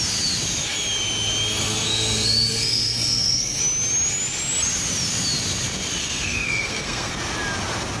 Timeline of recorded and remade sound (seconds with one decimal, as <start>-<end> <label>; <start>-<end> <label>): 0.0-1.6 recorded; 1.6-3.6 remade; 3.6-6.0 recorded; 6.0-7.1 remade; 7.1-8.0 recorded